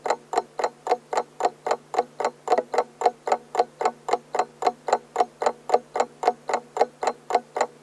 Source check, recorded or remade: recorded